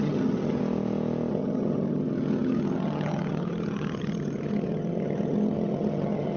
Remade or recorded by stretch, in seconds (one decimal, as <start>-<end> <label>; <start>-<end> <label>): 0.0-0.6 remade; 0.6-1.3 recorded; 1.3-6.4 remade

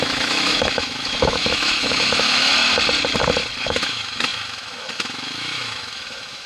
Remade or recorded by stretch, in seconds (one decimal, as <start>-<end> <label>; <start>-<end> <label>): 0.0-2.5 remade; 2.5-3.6 recorded; 3.6-6.5 remade

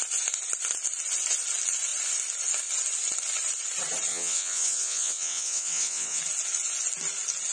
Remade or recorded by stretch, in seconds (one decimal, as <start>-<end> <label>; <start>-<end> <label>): 0.0-4.1 recorded; 4.1-6.2 remade; 6.2-7.5 recorded

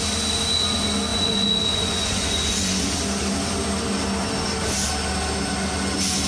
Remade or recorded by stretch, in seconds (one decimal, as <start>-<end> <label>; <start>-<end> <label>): 0.0-1.1 recorded; 1.1-3.0 remade; 3.0-6.3 recorded

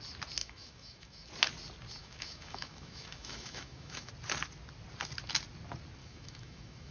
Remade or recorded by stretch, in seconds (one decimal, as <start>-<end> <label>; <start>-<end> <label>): 0.0-0.4 recorded; 0.4-1.3 remade; 1.3-2.0 recorded; 2.0-4.1 remade; 4.1-6.0 recorded; 6.0-6.9 remade

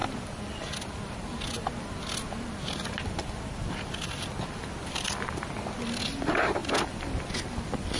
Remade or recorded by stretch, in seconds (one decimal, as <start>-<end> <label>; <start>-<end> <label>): 0.0-8.0 recorded